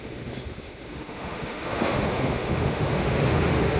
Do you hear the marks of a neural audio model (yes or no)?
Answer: yes